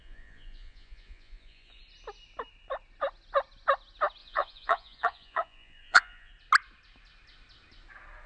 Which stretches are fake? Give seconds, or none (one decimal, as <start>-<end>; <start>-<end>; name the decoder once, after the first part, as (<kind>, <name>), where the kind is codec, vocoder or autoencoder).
0.0-1.8 (vocoder, Vocos); 4.2-6.3